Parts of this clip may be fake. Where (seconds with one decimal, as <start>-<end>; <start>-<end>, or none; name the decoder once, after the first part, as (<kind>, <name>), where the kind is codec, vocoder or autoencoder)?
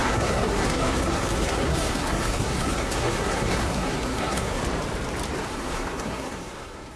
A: 0.0-4.6 (codec, SNAC); 5.5-7.0